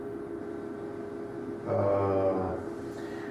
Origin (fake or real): real